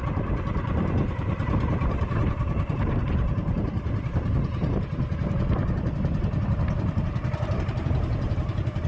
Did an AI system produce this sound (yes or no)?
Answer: yes